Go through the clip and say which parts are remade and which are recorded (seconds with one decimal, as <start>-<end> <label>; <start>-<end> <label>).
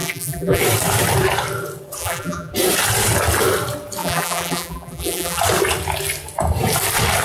0.0-0.6 remade; 0.6-2.0 recorded; 2.0-2.5 remade; 2.5-4.0 recorded; 4.0-5.4 remade; 5.4-7.2 recorded